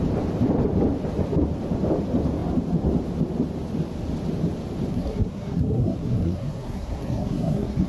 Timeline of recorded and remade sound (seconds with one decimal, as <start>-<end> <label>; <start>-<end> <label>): 0.0-4.9 recorded; 4.9-7.9 remade